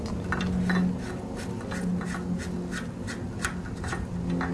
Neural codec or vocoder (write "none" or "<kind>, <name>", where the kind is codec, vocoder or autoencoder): none